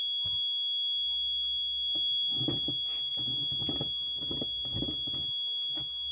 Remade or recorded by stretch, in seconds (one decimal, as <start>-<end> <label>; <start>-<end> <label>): 0.0-6.1 recorded